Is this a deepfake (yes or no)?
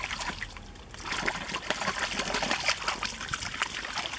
no